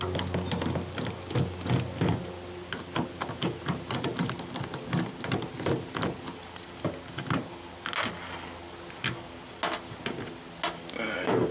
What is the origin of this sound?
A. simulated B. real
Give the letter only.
B